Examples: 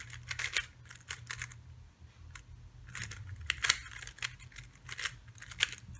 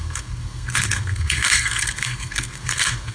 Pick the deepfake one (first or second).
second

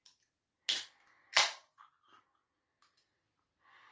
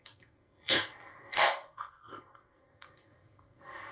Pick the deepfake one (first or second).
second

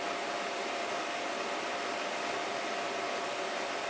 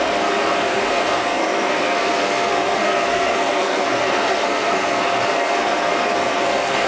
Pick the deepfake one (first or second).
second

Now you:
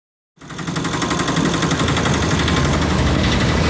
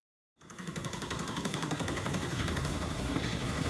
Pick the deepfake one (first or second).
second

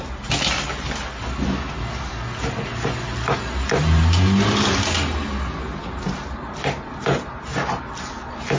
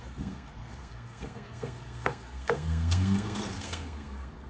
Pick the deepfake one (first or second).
second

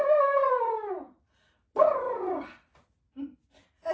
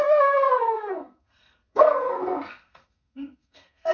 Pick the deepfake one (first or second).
second